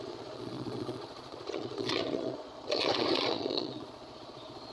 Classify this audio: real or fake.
fake